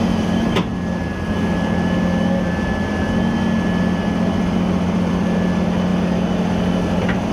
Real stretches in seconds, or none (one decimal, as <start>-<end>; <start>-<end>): 0.0-7.3